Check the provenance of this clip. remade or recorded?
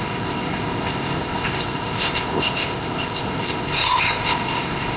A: remade